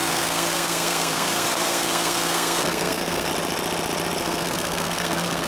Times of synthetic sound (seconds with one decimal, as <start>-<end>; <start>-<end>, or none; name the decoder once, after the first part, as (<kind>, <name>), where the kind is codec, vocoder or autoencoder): 0.0-3.3 (codec, SNAC); 4.2-5.5